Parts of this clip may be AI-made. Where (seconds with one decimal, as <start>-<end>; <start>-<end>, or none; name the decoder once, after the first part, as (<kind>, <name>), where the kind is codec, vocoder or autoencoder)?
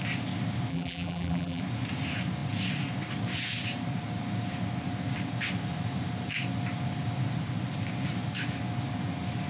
0.7-1.6 (vocoder, BigVGAN v2)